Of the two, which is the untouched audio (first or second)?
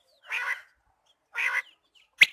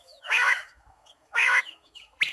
first